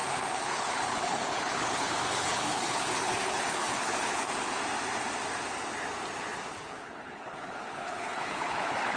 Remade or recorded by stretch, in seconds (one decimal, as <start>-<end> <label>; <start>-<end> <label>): 0.0-4.6 remade; 4.6-6.5 recorded; 6.5-9.0 remade

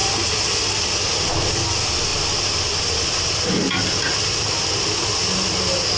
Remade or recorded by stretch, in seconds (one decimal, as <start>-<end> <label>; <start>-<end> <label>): 0.0-6.0 recorded

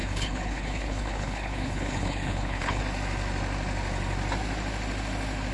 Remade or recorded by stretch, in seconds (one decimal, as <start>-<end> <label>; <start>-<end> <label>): 0.0-2.8 remade; 2.8-5.5 recorded